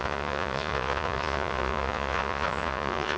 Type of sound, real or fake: fake